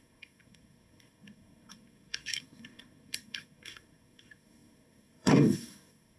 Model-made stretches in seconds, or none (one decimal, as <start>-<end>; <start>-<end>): 0.0-6.2

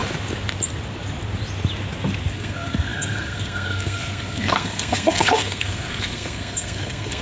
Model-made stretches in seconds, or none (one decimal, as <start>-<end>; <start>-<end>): 2.3-7.2

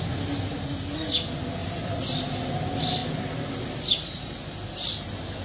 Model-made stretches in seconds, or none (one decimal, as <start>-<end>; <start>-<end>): 1.6-2.5